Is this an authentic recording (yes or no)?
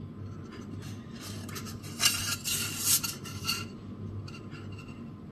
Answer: yes